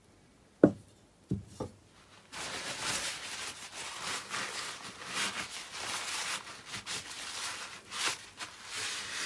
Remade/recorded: recorded